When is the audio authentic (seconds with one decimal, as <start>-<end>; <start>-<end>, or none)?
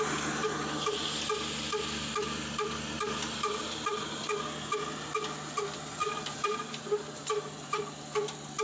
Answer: 0.0-6.0; 7.8-8.6